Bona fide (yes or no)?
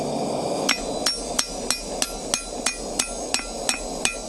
yes